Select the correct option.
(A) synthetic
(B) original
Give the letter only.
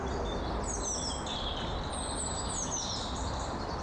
B